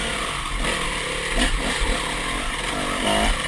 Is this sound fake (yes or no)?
no